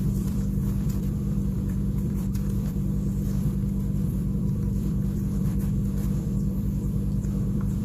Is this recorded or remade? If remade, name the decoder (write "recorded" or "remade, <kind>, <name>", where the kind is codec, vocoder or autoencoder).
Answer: remade, vocoder, BigVGAN v2